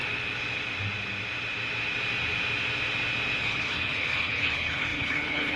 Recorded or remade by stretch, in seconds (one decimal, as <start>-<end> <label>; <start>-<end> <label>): 0.0-3.4 recorded; 3.4-5.6 remade